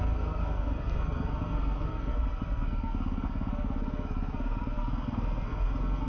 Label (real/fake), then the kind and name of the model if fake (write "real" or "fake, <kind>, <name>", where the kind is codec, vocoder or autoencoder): fake, codec, SNAC